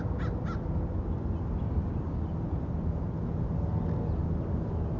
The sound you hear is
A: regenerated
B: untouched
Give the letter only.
B